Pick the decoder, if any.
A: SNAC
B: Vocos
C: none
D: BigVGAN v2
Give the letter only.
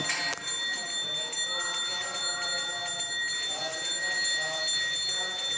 C